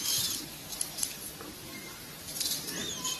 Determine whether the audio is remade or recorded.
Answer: remade